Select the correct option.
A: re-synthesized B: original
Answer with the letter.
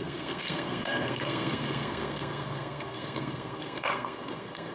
A